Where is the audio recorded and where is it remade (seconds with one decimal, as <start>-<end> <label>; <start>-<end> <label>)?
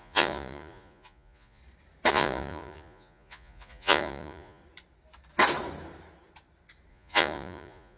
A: 0.0-1.6 remade; 1.6-2.1 recorded; 2.1-4.6 remade; 4.6-6.9 recorded; 6.9-8.0 remade